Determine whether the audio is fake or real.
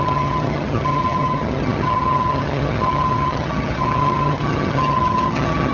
fake